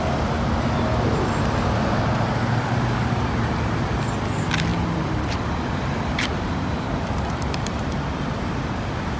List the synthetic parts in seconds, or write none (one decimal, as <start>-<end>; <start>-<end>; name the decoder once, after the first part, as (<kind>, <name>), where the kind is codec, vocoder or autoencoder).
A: 6.3-9.2 (vocoder, BigVGAN v2)